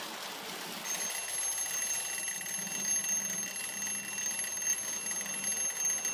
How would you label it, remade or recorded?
recorded